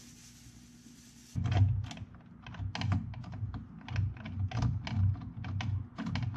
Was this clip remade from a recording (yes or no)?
no